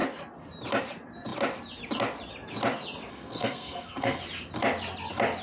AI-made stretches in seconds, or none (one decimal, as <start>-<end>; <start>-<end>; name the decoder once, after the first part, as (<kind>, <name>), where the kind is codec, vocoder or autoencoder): 3.1-4.2 (codec, SNAC)